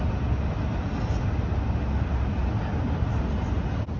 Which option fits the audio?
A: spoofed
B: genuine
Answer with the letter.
B